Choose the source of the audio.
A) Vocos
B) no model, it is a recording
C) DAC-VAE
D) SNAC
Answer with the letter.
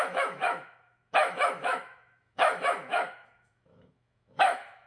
C